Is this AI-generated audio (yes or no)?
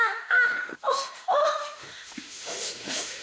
yes